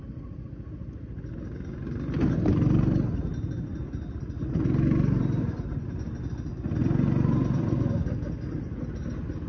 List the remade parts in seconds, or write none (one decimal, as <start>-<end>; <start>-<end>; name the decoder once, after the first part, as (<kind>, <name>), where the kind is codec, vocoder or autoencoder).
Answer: none